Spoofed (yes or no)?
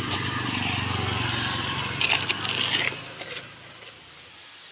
no